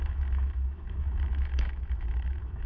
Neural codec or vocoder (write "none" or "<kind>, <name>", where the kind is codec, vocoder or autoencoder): autoencoder, DAC-VAE